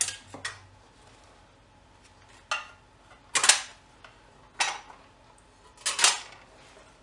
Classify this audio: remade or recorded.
recorded